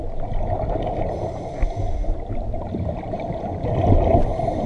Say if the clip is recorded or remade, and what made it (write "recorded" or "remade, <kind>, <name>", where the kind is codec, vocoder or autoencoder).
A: recorded